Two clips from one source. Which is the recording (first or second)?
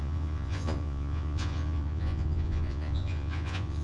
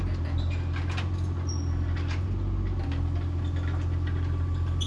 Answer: second